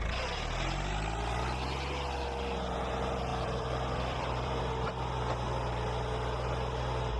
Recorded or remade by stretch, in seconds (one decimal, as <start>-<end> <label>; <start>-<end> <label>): 0.0-3.3 recorded; 3.3-4.6 remade; 4.6-7.2 recorded

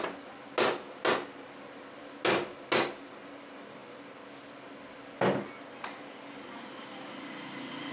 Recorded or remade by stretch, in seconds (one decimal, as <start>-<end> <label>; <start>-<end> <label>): 0.0-7.9 recorded

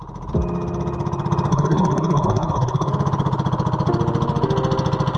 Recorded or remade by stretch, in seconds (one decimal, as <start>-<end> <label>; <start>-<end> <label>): 0.0-1.5 recorded; 1.5-2.9 remade; 2.9-5.2 recorded

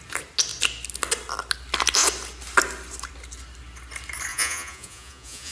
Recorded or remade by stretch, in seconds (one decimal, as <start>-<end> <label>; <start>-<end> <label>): 0.0-4.3 recorded; 4.3-5.5 remade

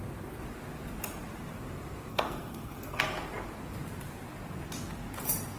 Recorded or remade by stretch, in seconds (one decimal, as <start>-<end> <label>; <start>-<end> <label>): 0.0-2.1 recorded; 2.1-3.0 remade; 3.0-5.6 recorded

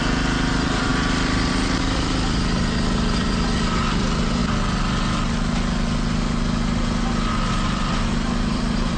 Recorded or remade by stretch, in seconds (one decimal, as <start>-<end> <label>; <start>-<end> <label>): 0.0-4.4 remade; 4.4-7.5 recorded; 7.5-9.0 remade

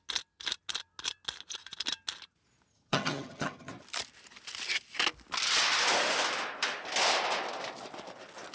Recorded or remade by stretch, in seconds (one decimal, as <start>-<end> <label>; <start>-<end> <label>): 0.0-2.7 recorded; 2.7-3.7 remade; 3.7-8.5 recorded